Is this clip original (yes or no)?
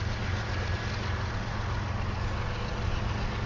yes